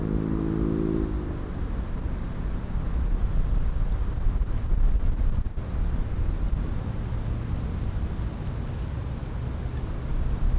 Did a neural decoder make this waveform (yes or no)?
no